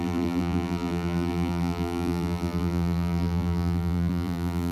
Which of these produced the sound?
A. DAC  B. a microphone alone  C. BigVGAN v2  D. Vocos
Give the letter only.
C